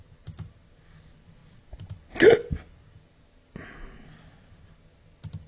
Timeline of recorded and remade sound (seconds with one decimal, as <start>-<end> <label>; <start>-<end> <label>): 0.0-5.5 recorded

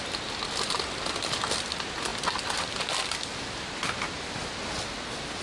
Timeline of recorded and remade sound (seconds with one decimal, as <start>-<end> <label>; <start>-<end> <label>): 0.0-5.4 recorded